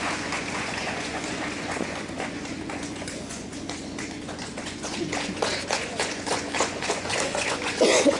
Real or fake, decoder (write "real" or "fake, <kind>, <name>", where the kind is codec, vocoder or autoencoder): fake, vocoder, Vocos